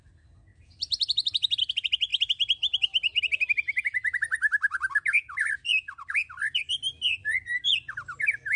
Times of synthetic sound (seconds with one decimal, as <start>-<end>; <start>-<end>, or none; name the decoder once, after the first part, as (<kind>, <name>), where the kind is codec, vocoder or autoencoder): 0.5-1.6 (vocoder, BigVGAN v2)